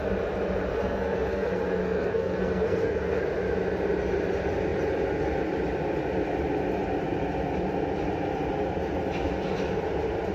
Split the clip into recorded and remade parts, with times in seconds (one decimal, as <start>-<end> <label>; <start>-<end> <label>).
0.0-0.7 recorded; 0.7-3.2 remade; 3.2-10.3 recorded